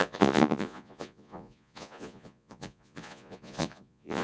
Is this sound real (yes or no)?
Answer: no